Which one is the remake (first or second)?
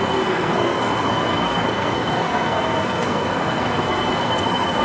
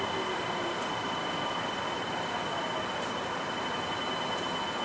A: first